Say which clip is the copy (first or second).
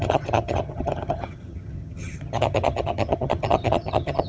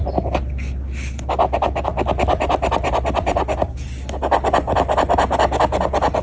first